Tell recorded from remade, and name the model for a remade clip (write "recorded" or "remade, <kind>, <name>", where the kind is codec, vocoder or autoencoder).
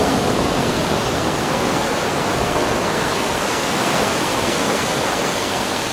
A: remade, codec, SNAC